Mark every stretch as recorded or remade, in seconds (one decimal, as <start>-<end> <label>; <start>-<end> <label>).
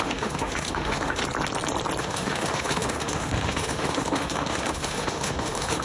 0.0-1.2 remade; 1.2-2.0 recorded; 2.0-5.8 remade